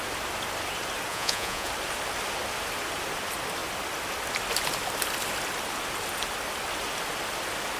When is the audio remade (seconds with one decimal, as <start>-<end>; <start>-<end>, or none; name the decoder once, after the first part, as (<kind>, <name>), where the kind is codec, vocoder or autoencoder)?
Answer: 1.1-1.7 (vocoder, Vocos)